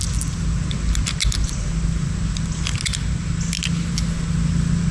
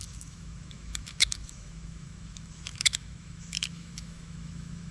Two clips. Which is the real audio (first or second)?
first